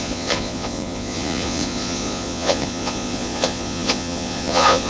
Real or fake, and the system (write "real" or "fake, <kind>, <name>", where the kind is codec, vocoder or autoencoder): fake, vocoder, Vocos